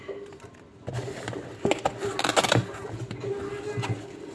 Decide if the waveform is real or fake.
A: real